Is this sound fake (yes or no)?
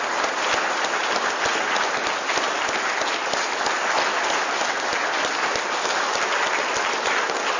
no